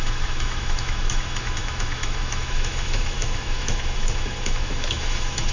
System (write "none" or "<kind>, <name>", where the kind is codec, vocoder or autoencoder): autoencoder, DAC-VAE